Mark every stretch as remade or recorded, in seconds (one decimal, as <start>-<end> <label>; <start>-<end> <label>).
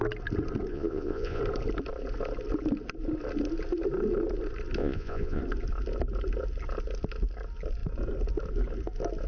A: 0.0-0.7 recorded; 0.7-1.4 remade; 1.4-4.8 recorded; 4.8-5.4 remade; 5.4-9.3 recorded